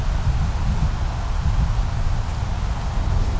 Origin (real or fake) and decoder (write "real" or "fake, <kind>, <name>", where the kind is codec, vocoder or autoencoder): real